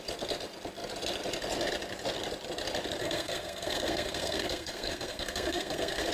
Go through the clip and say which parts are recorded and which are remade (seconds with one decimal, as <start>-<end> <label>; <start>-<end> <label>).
0.0-3.0 recorded; 3.0-6.1 remade